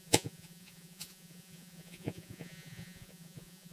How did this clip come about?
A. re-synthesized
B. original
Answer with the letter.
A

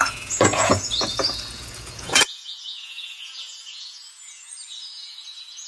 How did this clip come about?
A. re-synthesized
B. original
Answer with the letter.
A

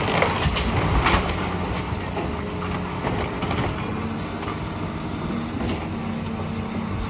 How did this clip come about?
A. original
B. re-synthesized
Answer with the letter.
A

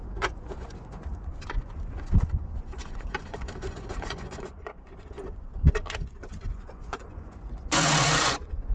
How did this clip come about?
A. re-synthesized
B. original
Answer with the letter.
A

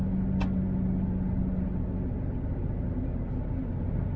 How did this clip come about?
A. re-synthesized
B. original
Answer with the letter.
B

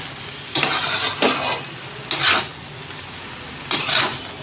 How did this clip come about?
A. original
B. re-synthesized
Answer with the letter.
A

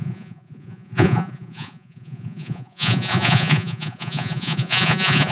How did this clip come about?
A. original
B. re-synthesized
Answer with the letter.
B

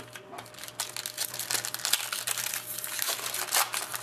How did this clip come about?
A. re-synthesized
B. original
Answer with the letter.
B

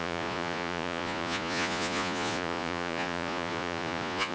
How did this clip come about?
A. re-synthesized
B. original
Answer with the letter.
A